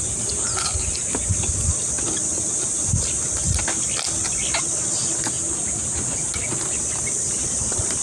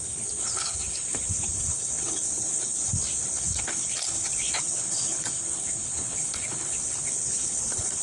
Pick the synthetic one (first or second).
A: second